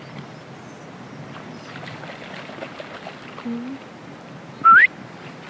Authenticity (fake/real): real